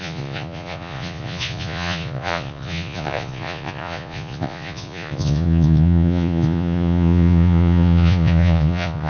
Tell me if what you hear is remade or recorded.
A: remade